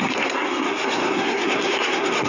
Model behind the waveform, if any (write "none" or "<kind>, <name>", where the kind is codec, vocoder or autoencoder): codec, SNAC